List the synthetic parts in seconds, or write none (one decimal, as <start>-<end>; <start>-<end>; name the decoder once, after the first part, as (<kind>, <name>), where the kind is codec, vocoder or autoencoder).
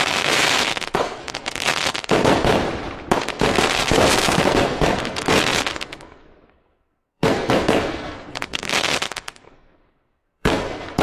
0.0-2.5 (codec, SNAC); 3.2-11.0